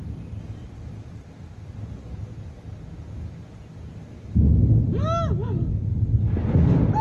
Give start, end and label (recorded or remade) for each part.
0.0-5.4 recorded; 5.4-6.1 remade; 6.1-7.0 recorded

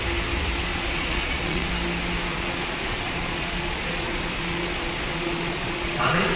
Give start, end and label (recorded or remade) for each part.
0.0-0.7 recorded; 0.7-1.7 remade; 1.7-2.3 recorded; 2.3-6.4 remade

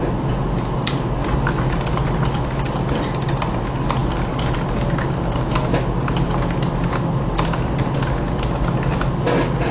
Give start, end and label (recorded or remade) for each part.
0.0-9.7 recorded

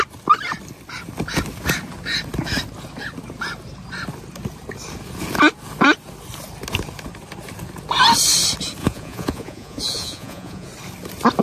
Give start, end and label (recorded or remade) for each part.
0.0-8.8 recorded; 8.8-10.7 remade; 10.7-11.4 recorded

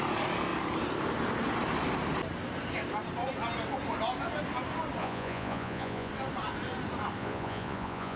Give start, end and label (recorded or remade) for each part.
0.0-5.0 recorded; 5.0-6.1 remade; 6.1-7.2 recorded; 7.2-8.2 remade

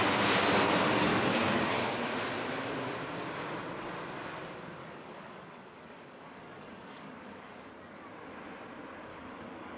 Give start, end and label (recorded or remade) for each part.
0.0-1.1 recorded; 1.1-2.0 remade; 2.0-4.8 recorded; 4.8-8.0 remade; 8.0-9.1 recorded; 9.1-9.8 remade